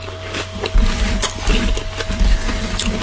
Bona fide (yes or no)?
yes